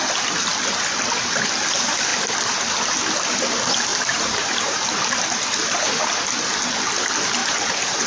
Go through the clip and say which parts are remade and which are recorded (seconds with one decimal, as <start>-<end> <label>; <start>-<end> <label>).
0.0-3.9 recorded; 3.9-5.9 remade; 5.9-7.4 recorded; 7.4-8.1 remade